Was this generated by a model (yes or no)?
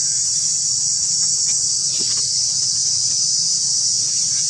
no